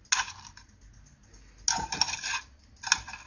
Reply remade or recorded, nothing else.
recorded